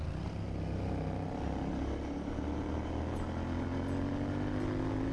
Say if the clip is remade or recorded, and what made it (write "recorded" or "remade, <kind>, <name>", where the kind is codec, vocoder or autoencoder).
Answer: recorded